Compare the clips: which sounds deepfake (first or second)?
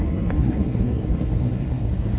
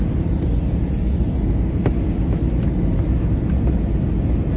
first